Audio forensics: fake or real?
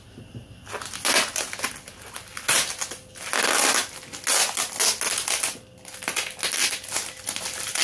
real